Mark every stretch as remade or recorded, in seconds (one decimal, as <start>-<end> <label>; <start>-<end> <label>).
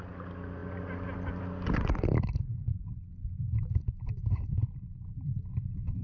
0.0-6.0 recorded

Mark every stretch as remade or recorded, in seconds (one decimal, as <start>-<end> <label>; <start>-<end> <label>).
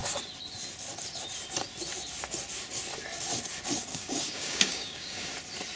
0.0-3.9 recorded; 3.9-5.3 remade; 5.3-5.8 recorded